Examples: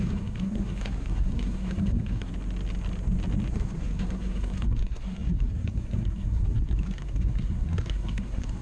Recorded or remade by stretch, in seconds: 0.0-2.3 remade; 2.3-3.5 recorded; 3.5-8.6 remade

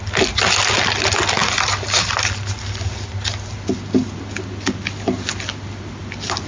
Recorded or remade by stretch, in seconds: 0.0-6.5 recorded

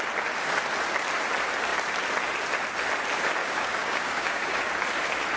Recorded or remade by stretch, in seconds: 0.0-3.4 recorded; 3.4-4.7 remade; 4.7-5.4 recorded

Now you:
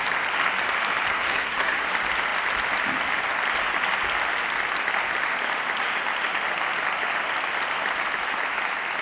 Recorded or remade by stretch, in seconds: 0.0-1.1 recorded; 1.1-1.9 remade; 1.9-9.0 recorded

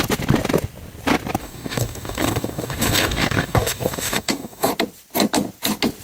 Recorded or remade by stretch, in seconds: 0.0-1.4 recorded; 1.4-4.7 remade; 4.7-6.0 recorded

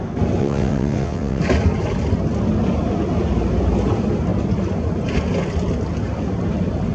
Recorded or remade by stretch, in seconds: 0.0-0.4 recorded; 0.4-1.4 remade; 1.4-6.9 recorded

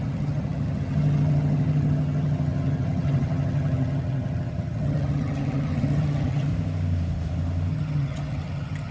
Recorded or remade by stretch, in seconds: 0.0-6.5 remade; 6.5-7.7 recorded; 7.7-8.9 remade